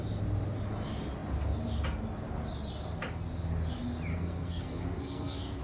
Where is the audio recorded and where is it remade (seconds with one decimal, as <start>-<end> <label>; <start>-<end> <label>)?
0.0-4.1 recorded; 4.1-5.6 remade